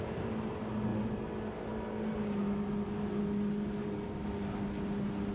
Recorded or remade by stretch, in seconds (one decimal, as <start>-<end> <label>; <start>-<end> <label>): 0.0-5.3 recorded